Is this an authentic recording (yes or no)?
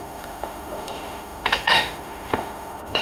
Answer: no